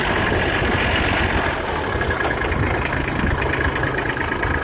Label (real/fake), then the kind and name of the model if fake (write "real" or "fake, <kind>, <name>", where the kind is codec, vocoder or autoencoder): real